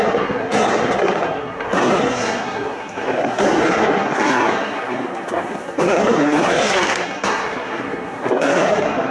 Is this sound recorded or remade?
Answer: remade